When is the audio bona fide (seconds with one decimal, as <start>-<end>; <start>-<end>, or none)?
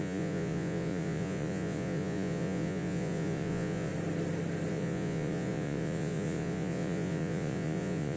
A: 3.9-4.7